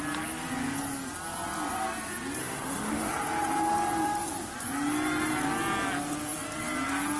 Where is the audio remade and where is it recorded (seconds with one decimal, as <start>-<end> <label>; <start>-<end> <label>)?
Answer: 0.0-2.4 recorded; 2.4-3.1 remade; 3.1-7.2 recorded